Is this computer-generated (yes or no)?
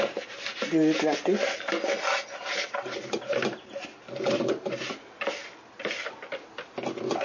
no